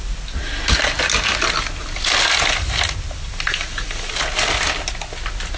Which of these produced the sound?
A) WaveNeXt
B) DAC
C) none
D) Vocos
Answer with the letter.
C